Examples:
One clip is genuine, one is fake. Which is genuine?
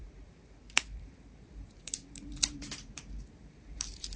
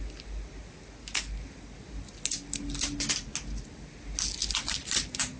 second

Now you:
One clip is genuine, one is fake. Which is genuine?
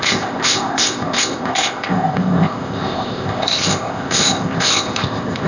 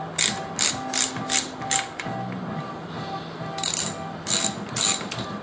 second